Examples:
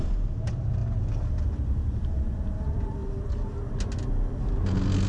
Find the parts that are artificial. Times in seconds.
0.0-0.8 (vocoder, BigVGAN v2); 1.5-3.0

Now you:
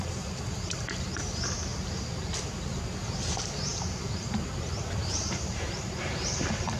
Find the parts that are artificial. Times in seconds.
0.0-1.7 (vocoder, BigVGAN v2); 3.5-6.8

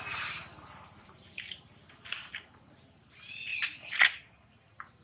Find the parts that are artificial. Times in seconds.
none

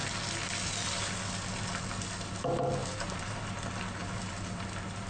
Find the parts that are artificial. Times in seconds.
2.8-3.5 (vocoder, BigVGAN v2); 4.0-5.1

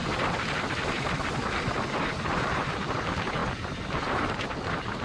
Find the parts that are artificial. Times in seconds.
0.0-5.0 (vocoder, BigVGAN v2)

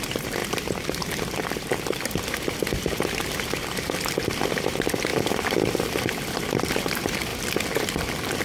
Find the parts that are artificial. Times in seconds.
0.0-7.3 (vocoder, BigVGAN v2); 7.9-8.4

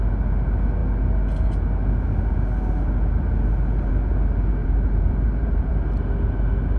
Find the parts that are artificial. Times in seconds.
4.6-5.7 (vocoder, BigVGAN v2)